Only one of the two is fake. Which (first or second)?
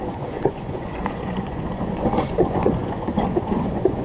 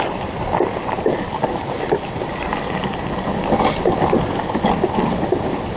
first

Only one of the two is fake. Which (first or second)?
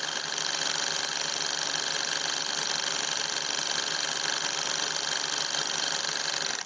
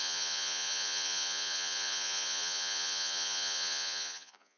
second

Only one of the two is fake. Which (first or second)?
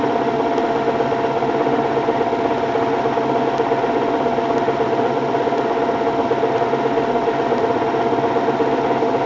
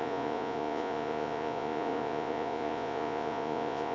second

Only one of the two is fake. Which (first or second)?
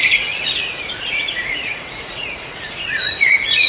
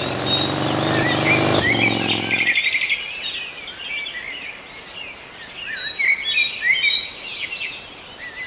first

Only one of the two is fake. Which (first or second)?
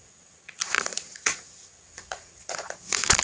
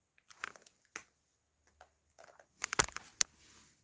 first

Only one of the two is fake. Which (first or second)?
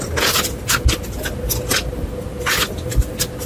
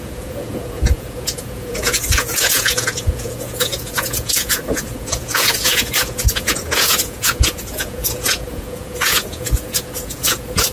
second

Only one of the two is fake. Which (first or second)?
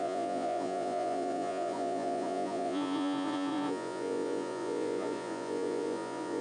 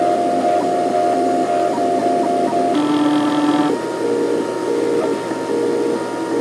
first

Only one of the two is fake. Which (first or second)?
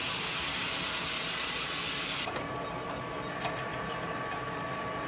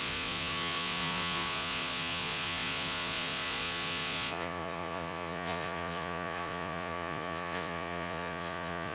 second